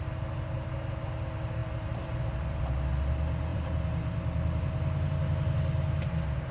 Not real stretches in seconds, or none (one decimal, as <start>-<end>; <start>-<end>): 1.6-2.6; 3.5-4.6